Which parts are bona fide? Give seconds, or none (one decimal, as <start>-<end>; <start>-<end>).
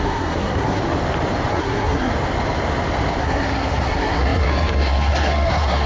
0.8-1.5; 2.1-3.2